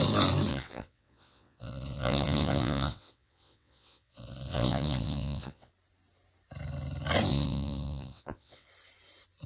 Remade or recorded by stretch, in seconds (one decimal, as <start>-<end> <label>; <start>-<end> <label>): 0.0-0.5 recorded; 0.5-5.7 remade; 5.7-7.3 recorded; 7.3-8.7 remade; 8.7-9.5 recorded